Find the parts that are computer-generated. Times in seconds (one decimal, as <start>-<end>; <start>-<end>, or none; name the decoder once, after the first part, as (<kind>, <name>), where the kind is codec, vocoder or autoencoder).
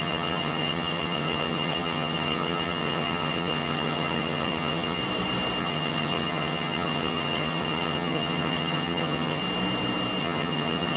0.0-5.0 (vocoder, HiFi-GAN); 5.6-9.4; 10.2-11.0